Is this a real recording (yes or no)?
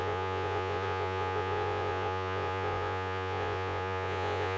no